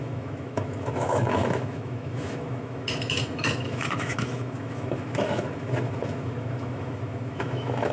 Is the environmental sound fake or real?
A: fake